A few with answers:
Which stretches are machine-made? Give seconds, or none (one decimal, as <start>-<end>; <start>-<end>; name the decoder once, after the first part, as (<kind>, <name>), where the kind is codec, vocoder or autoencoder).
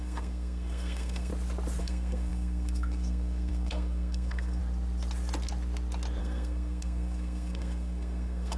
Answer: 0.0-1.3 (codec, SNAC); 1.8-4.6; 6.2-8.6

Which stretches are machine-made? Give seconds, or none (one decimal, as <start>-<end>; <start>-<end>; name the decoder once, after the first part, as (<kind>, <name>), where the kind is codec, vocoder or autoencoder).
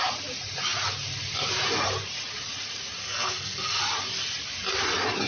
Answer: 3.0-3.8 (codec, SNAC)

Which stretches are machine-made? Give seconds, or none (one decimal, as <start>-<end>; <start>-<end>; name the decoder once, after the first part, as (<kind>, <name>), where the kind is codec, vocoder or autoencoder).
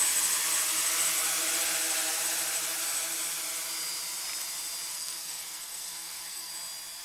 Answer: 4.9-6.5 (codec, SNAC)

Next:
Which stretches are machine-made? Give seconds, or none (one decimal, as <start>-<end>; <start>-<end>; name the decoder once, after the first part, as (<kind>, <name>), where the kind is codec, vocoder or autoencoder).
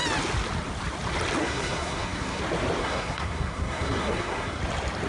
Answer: 1.4-2.4 (codec, SNAC); 2.8-4.6